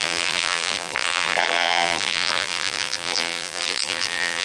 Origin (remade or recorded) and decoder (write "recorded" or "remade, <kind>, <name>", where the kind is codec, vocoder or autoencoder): remade, vocoder, BigVGAN v2